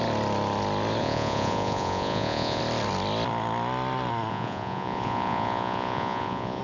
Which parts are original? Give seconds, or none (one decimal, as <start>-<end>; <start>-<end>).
0.0-1.0; 2.6-4.3